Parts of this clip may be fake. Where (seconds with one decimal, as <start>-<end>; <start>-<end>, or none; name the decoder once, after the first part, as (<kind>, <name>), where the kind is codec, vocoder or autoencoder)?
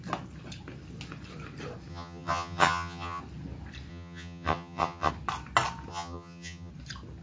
1.9-3.2 (vocoder, HiFi-GAN); 3.9-5.1; 5.9-6.7